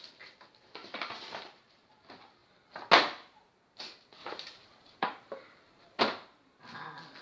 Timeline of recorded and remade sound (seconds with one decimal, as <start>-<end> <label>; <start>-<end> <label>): 0.0-0.8 recorded; 0.8-1.9 remade; 1.9-4.2 recorded; 4.2-6.0 remade; 6.0-7.2 recorded